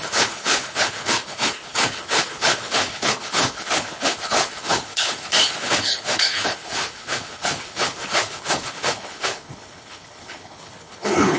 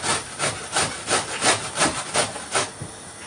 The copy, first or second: first